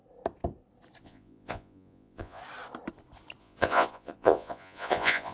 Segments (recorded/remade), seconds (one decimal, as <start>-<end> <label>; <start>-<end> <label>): 0.0-1.0 recorded; 1.0-2.4 remade; 2.4-3.4 recorded; 3.4-5.3 remade